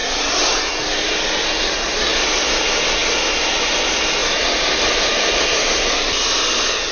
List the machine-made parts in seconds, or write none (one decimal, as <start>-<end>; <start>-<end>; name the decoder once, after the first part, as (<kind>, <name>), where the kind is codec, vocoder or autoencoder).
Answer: 0.0-0.7 (vocoder, BigVGAN v2); 4.2-5.4